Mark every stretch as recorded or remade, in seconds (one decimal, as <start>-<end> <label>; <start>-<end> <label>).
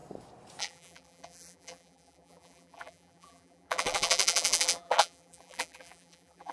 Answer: 0.0-0.6 recorded; 0.6-6.5 remade